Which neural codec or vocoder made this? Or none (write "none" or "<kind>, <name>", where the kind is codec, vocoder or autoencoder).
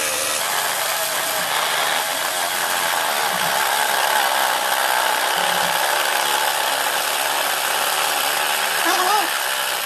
none